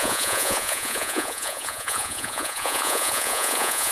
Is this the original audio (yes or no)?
no